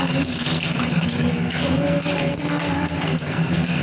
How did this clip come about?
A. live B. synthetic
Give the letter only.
B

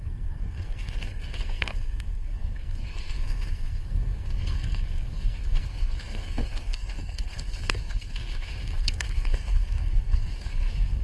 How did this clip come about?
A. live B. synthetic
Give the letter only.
B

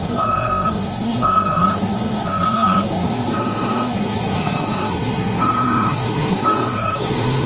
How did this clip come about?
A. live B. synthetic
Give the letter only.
B